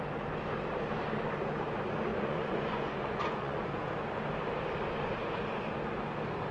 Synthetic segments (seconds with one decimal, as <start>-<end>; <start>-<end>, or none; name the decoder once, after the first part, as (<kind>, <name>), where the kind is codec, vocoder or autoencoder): 2.1-3.9 (vocoder, Vocos)

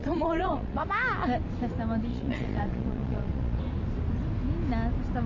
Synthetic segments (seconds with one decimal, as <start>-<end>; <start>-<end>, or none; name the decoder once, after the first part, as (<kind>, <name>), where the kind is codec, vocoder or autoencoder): 0.0-0.8 (vocoder, Vocos); 2.1-3.6

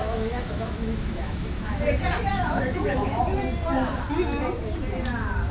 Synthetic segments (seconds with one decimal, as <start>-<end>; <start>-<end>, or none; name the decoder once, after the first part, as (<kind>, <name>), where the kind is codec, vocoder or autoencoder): 0.0-1.8 (autoencoder, DAC-VAE); 2.3-3.2

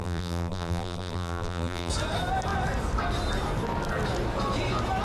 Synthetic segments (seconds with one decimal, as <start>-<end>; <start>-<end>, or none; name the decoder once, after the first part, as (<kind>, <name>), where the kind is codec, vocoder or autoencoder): 0.0-1.9 (vocoder, BigVGAN v2)

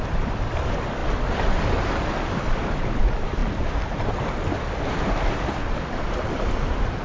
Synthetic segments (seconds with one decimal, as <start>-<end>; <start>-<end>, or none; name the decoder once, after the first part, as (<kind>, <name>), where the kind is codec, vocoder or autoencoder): none

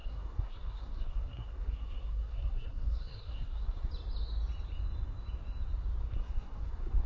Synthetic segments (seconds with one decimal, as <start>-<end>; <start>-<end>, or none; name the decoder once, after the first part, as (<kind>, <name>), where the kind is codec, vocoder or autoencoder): 0.0-3.9 (codec, SNAC); 6.0-7.1